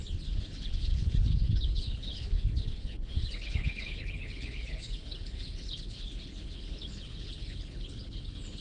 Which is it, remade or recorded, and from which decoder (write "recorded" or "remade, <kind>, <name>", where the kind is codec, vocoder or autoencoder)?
remade, codec, HILCodec